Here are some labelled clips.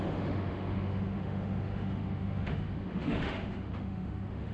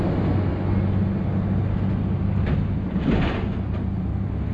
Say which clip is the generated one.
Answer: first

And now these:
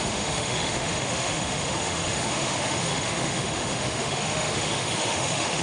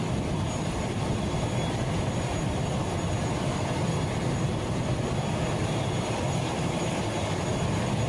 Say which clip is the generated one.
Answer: first